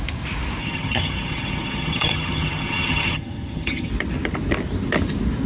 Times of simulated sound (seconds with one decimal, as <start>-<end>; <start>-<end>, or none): 0.6-3.9